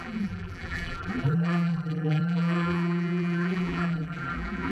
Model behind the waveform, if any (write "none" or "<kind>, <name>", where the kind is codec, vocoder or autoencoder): vocoder, BigVGAN v2